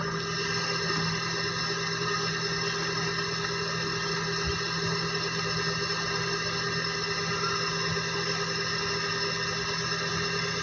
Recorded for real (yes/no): yes